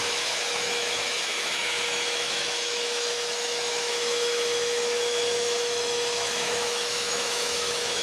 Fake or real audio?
fake